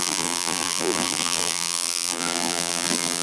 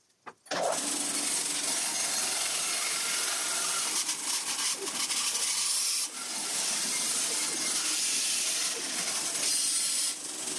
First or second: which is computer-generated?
first